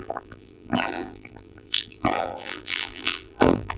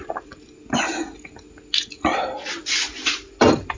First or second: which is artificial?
first